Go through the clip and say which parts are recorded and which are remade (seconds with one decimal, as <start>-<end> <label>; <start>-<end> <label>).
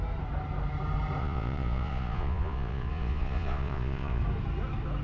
0.0-1.2 recorded; 1.2-4.2 remade; 4.2-5.0 recorded